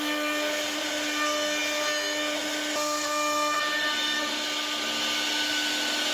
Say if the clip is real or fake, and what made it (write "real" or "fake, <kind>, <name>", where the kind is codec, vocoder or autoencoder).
real